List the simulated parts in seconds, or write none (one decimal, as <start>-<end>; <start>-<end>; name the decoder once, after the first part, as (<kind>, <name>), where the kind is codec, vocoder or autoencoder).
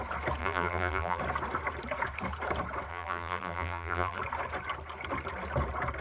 0.4-1.2 (vocoder, BigVGAN v2); 2.9-4.2